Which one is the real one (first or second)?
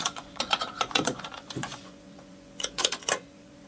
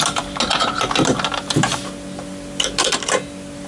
second